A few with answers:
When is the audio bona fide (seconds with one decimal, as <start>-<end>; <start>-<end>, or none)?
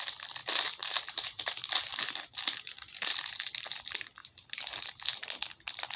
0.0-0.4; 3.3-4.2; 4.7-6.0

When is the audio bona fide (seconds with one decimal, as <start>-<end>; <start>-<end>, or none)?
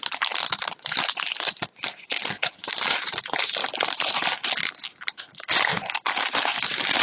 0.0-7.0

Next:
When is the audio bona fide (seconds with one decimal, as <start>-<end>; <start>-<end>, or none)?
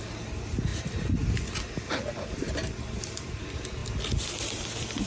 0.0-5.1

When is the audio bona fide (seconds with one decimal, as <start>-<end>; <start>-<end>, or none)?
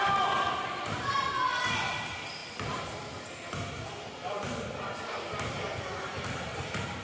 0.0-7.0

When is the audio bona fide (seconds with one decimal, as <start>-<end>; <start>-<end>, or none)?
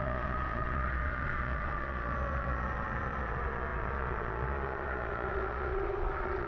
none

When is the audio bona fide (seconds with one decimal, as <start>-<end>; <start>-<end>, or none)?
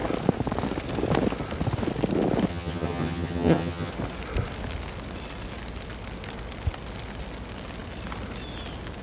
0.0-2.5; 3.9-9.0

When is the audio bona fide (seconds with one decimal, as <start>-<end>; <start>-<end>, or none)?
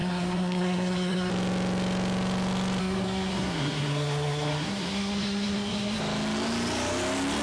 1.3-2.8; 6.0-7.4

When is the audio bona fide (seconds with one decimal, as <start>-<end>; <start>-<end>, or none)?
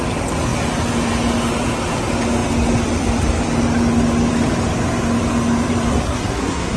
0.0-5.9